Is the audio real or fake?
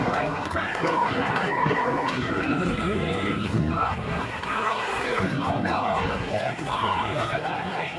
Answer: fake